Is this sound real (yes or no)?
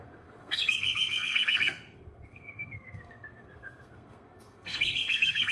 no